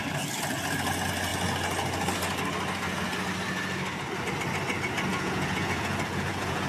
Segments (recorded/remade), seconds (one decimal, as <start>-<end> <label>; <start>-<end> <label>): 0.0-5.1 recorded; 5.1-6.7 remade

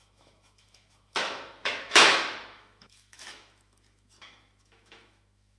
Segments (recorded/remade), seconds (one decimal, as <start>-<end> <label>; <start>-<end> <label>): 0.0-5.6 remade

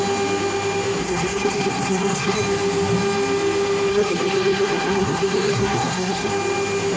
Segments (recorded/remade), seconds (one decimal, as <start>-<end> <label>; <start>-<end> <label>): 0.0-1.0 recorded; 1.0-2.4 remade; 2.4-3.9 recorded; 3.9-6.3 remade; 6.3-7.0 recorded

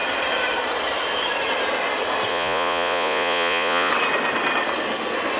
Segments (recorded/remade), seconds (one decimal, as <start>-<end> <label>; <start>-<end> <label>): 0.0-2.3 recorded; 2.3-3.9 remade; 3.9-5.4 recorded

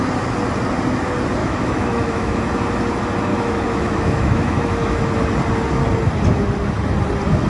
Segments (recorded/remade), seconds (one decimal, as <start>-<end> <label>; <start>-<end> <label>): 0.0-1.4 recorded; 1.4-2.4 remade; 2.4-3.3 recorded; 3.3-5.1 remade; 5.1-7.5 recorded

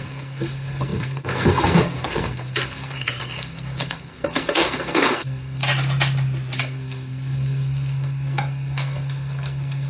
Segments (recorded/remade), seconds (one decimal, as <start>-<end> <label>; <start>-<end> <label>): 0.0-5.6 remade; 5.6-6.6 recorded; 6.6-9.9 remade

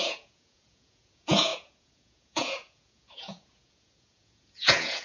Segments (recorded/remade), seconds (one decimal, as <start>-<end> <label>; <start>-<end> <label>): 0.0-5.0 remade

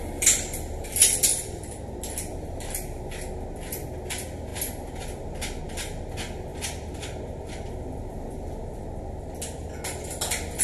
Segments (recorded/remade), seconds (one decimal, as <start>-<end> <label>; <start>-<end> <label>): 0.0-1.3 recorded; 1.3-1.8 remade; 1.8-4.5 recorded; 4.5-5.6 remade; 5.6-6.5 recorded; 6.5-8.8 remade; 8.8-10.6 recorded